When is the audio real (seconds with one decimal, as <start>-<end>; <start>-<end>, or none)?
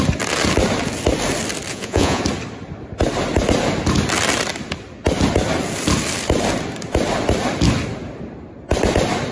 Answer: 0.0-1.7; 2.2-9.3